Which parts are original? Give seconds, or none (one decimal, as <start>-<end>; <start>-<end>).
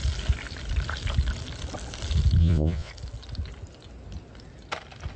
0.0-2.4; 2.9-5.2